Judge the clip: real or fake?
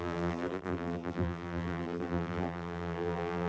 fake